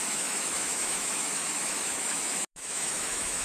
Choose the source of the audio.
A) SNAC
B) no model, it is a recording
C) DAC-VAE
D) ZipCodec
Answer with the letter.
C